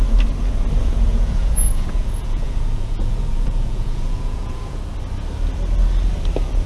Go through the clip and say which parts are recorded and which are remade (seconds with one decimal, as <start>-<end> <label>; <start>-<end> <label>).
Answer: 0.0-0.8 recorded; 0.8-4.8 remade; 4.8-6.7 recorded